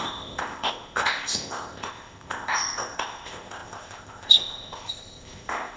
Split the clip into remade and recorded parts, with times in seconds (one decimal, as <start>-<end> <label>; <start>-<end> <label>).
0.0-5.8 remade